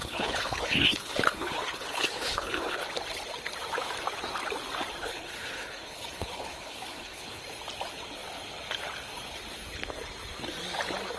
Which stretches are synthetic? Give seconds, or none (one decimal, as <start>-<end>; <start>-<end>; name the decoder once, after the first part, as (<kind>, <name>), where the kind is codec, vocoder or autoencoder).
0.0-2.9 (codec, HILCodec); 5.0-7.4